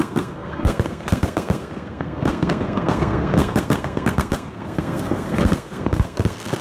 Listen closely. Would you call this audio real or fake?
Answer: fake